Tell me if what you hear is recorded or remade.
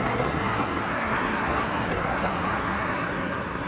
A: remade